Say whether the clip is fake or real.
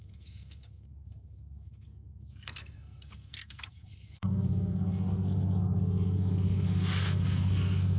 fake